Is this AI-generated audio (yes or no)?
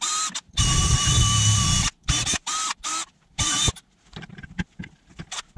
no